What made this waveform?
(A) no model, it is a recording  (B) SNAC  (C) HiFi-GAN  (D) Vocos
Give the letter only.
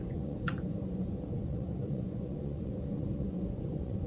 D